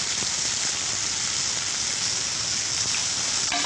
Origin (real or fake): real